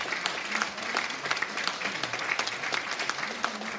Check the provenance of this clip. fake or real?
real